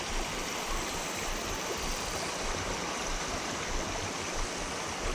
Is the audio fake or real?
real